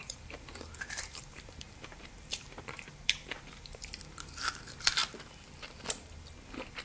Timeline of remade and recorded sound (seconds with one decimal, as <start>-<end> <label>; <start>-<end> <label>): 0.0-4.0 remade; 4.0-6.8 recorded